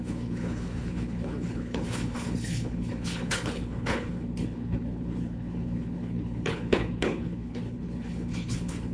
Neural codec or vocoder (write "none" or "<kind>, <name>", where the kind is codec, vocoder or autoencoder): codec, HILCodec